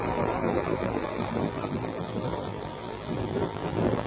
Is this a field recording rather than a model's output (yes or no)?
no